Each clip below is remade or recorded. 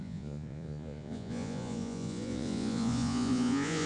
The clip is remade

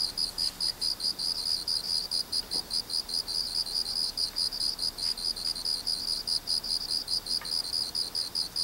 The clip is recorded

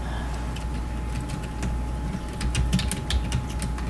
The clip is recorded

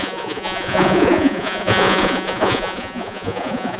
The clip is remade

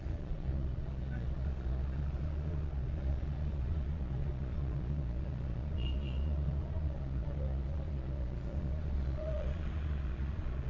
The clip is remade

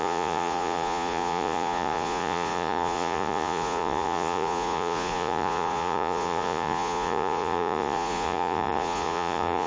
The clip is remade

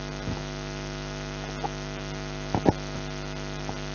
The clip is recorded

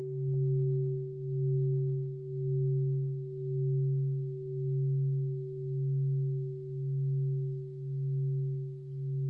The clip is recorded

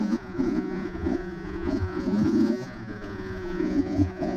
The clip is remade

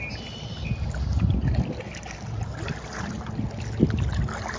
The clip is recorded